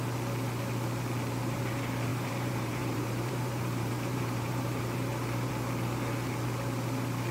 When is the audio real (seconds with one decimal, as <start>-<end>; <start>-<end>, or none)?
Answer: 0.0-2.1; 5.5-7.3